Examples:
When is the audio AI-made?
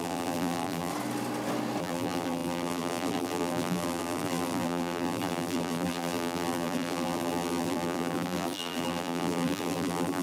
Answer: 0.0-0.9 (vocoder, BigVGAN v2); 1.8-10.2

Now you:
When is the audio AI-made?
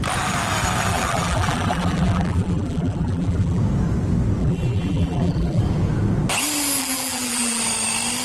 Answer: 0.9-3.6 (vocoder, BigVGAN v2); 4.4-5.6; 6.8-7.6